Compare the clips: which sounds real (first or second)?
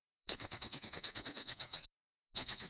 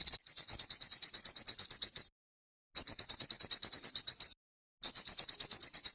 second